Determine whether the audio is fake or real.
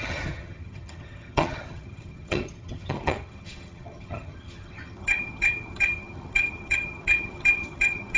fake